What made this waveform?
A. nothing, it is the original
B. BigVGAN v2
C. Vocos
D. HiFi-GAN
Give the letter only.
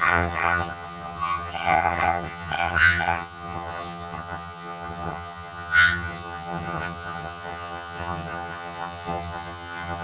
D